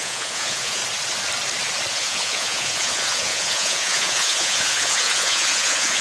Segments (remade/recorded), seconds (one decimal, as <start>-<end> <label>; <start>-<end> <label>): 0.0-0.8 remade; 0.8-1.9 recorded; 1.9-6.0 remade